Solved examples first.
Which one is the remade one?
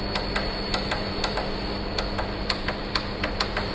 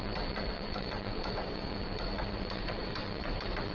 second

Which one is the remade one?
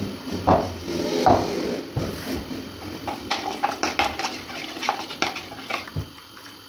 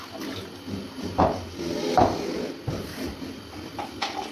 first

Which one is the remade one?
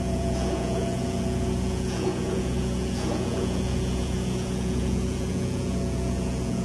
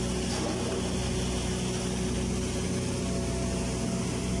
first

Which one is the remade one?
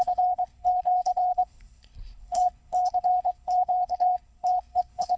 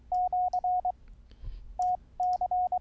first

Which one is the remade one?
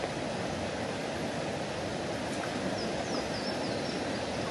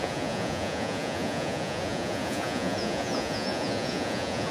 second